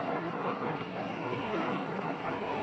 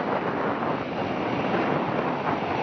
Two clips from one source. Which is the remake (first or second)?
first